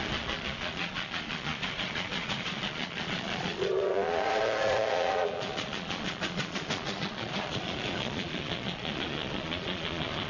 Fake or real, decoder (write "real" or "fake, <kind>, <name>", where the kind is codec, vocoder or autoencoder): fake, vocoder, Vocos